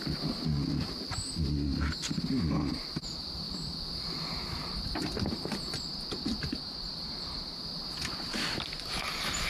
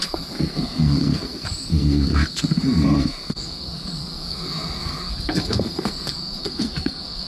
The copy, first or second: second